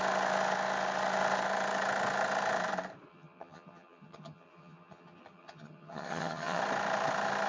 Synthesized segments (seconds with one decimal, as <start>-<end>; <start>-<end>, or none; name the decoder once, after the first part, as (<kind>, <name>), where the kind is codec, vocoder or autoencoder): 3.1-6.6 (vocoder, HiFi-GAN)